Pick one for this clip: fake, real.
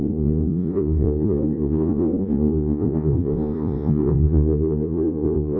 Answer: fake